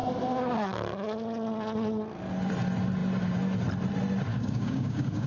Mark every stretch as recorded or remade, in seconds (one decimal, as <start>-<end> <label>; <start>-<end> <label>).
0.0-4.3 recorded; 4.3-5.3 remade